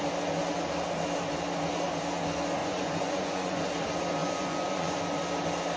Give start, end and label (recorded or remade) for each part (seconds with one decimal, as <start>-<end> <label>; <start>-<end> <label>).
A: 0.0-2.6 recorded; 2.6-3.7 remade; 3.7-4.2 recorded; 4.2-5.0 remade; 5.0-5.8 recorded